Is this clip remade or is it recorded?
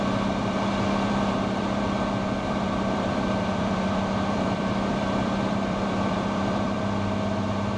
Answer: remade